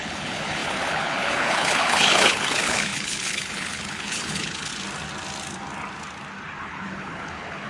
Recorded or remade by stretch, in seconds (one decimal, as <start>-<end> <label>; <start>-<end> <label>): 0.0-4.7 remade; 4.7-6.6 recorded; 6.6-7.7 remade